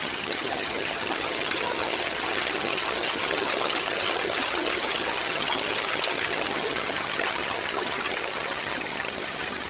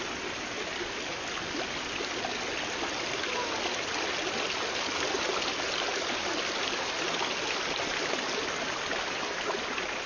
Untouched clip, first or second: second